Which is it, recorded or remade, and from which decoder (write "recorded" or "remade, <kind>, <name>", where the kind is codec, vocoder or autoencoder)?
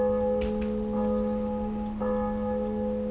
recorded